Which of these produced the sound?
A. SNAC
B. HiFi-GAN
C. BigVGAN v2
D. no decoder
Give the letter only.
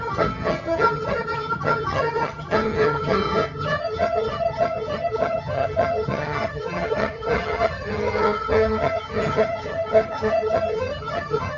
B